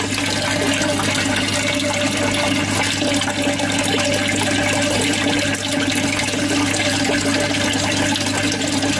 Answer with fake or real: real